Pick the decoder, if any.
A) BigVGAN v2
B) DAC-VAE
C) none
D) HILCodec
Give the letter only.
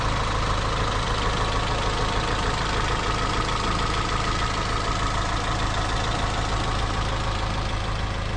C